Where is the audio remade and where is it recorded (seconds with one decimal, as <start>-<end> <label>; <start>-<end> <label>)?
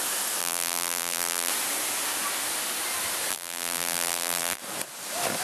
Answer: 0.0-0.4 recorded; 0.4-1.5 remade; 1.5-3.3 recorded; 3.3-4.6 remade; 4.6-5.4 recorded